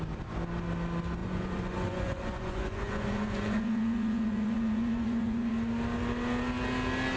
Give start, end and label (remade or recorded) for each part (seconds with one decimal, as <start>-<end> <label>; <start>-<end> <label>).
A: 0.0-1.2 recorded; 1.2-5.5 remade; 5.5-7.2 recorded